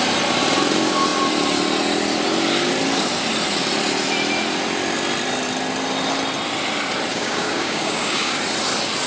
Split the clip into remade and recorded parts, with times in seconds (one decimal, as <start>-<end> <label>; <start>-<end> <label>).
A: 0.0-7.1 recorded; 7.1-8.4 remade; 8.4-9.1 recorded